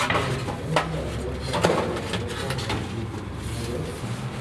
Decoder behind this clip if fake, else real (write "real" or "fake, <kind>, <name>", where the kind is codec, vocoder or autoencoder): real